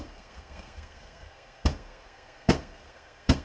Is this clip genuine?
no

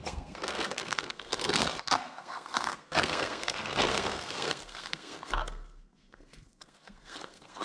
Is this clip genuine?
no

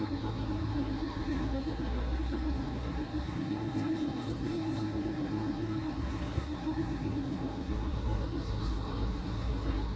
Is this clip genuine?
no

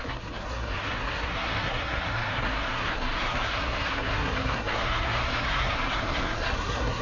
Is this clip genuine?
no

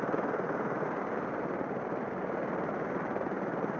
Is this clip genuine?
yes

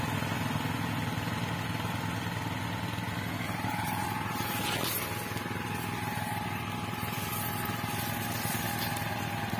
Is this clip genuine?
yes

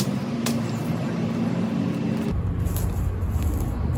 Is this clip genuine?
yes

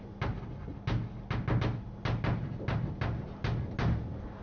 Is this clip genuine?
yes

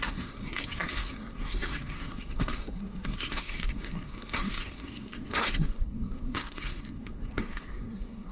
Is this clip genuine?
no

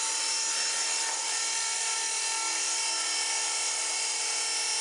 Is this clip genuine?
yes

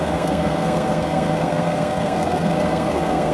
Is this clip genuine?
no